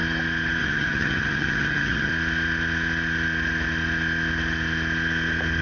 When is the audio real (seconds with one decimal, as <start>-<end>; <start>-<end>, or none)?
0.0-0.6; 2.1-5.6